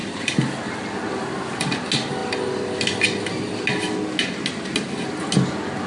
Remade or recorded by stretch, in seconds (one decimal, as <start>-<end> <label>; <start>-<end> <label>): 0.0-0.8 remade; 0.8-5.9 recorded